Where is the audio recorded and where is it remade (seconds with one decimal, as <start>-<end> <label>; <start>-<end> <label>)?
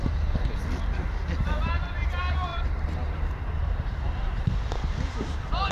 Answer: 0.0-2.5 recorded; 2.5-4.7 remade; 4.7-5.7 recorded